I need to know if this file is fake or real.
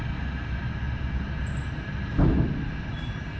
real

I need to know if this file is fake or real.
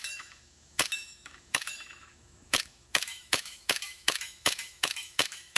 fake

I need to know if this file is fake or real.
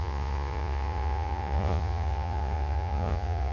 fake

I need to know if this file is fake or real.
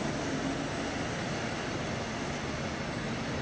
real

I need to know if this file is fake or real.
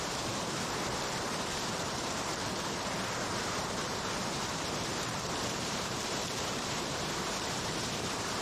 fake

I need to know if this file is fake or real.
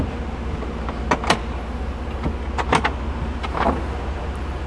real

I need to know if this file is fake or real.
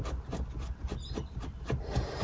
real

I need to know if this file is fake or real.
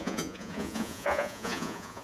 fake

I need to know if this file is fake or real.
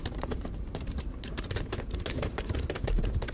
fake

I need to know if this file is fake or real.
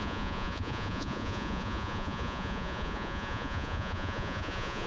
fake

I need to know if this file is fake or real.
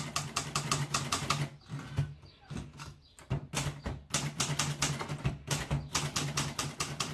real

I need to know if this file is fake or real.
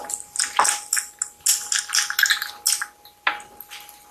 real